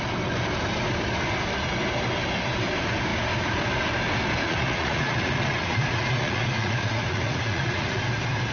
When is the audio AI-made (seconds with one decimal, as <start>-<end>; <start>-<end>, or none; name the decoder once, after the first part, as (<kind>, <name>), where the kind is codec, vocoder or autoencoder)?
4.4-8.0 (vocoder, Vocos)